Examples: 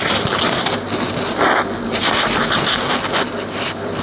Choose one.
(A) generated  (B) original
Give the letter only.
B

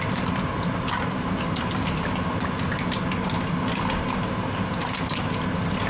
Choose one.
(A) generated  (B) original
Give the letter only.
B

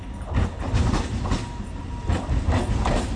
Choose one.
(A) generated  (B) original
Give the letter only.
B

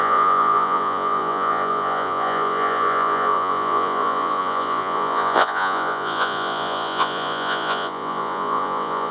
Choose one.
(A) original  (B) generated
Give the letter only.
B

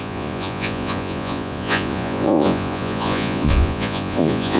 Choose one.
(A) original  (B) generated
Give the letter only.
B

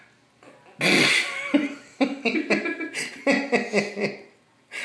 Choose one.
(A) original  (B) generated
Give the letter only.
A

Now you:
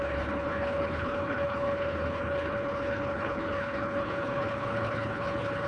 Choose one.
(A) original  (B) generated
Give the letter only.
B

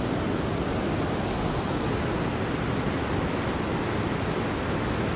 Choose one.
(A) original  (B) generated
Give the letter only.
A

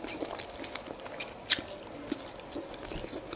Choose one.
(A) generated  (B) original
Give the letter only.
B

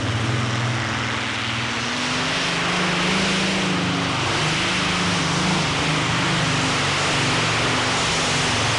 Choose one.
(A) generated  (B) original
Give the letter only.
B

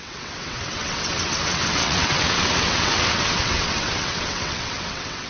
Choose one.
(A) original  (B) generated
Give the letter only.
B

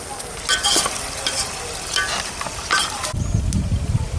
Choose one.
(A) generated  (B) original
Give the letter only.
B